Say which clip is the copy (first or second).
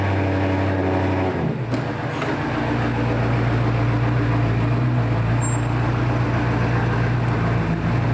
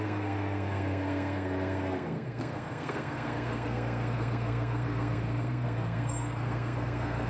second